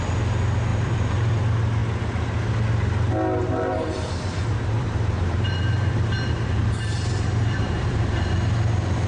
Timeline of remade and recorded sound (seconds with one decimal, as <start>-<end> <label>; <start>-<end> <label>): 0.0-0.7 recorded; 0.7-1.4 remade; 1.4-3.4 recorded; 3.4-8.3 remade; 8.3-9.1 recorded